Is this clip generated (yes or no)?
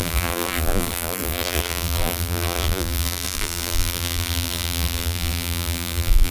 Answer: yes